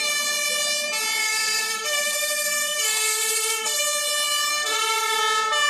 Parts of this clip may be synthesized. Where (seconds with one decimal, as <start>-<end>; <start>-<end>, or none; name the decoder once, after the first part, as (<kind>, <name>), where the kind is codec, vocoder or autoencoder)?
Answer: 1.2-3.8 (codec, SNAC); 4.5-5.2